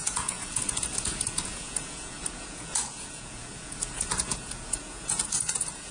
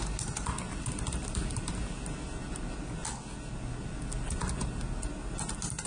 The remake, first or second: first